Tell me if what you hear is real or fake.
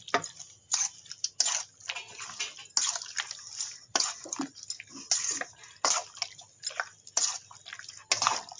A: real